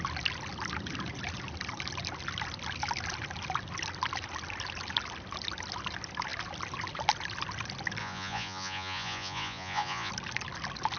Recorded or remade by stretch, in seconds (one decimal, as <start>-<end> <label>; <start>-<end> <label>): 0.0-8.0 recorded; 8.0-10.1 remade; 10.1-11.0 recorded